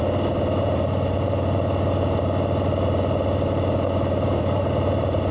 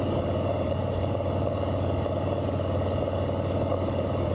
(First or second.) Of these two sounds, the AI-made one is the second